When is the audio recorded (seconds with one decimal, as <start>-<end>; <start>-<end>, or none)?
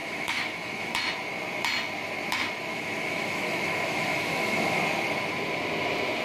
0.9-2.7; 4.8-6.2